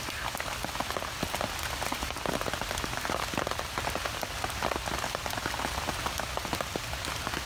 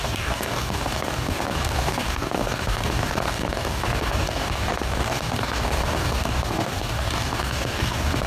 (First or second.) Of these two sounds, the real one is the first